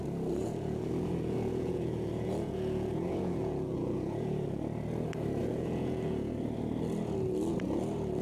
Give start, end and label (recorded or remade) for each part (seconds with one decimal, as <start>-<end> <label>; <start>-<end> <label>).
0.0-0.4 recorded; 0.4-4.6 remade; 4.6-5.4 recorded; 5.4-6.3 remade; 6.3-8.2 recorded